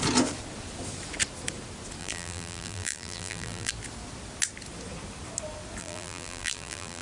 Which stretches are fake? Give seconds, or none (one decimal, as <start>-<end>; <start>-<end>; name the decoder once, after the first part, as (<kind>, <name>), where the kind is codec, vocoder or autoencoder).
2.0-3.7 (vocoder, BigVGAN v2); 5.8-7.0